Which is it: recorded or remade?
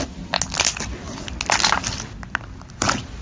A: recorded